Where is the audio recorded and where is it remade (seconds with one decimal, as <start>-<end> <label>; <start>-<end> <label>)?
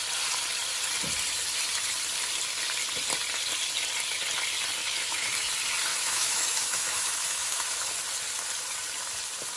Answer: 0.0-4.8 recorded; 4.8-5.5 remade; 5.5-5.9 recorded; 5.9-7.9 remade; 7.9-9.6 recorded